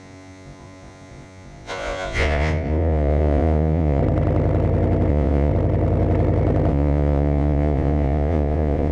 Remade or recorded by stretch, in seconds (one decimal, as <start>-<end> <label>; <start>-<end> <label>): 0.0-4.0 remade; 4.0-5.1 recorded; 5.1-5.5 remade; 5.5-6.7 recorded; 6.7-8.9 remade